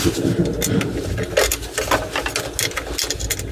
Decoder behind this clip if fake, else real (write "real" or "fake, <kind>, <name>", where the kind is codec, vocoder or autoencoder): real